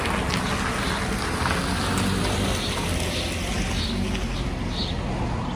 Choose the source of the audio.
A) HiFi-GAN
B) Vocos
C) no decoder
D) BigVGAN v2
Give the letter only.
C